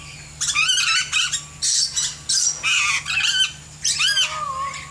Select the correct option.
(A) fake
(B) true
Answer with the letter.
B